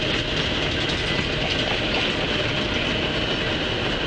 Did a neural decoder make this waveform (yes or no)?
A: no